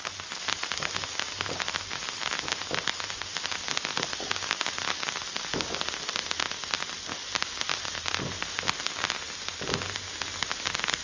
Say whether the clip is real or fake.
real